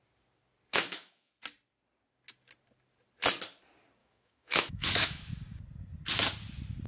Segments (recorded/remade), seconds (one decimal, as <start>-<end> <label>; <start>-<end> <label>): 0.0-0.7 recorded; 0.7-1.3 remade; 1.3-4.0 recorded; 4.0-5.3 remade; 5.3-6.9 recorded